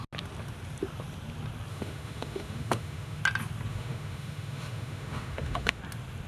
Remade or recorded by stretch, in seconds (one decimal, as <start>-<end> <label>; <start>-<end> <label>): 0.0-1.7 recorded; 1.7-3.2 remade; 3.2-3.7 recorded; 3.7-5.8 remade; 5.8-6.3 recorded